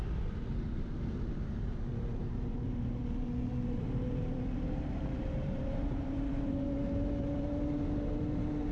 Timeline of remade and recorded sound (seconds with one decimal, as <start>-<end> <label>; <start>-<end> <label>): 0.0-0.7 recorded; 0.7-8.7 remade